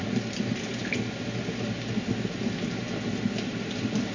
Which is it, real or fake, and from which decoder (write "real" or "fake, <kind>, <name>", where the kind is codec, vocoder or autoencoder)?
real